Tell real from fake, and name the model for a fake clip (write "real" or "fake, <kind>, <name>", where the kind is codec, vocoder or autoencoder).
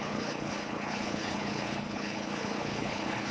fake, codec, HILCodec